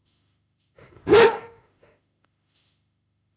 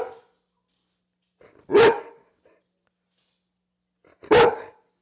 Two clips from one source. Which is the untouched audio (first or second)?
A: second